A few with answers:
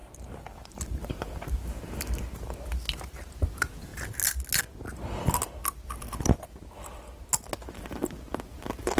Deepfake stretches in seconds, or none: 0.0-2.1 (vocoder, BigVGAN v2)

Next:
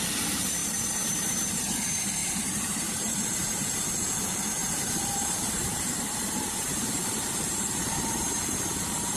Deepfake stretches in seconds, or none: 0.6-1.6 (vocoder, BigVGAN v2); 2.2-3.8; 4.6-9.2

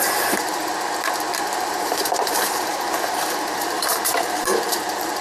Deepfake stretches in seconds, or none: 0.0-0.6 (vocoder, BigVGAN v2); 1.4-5.2

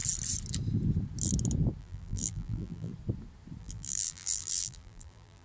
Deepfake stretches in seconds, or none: 1.8-2.9 (vocoder, BigVGAN v2); 3.6-5.4

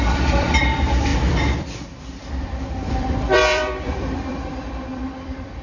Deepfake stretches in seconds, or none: 0.0-5.6 (vocoder, BigVGAN v2)